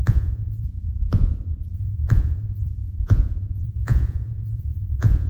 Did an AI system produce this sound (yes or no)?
yes